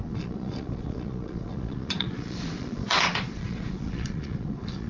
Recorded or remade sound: remade